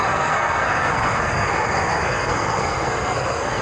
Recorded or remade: remade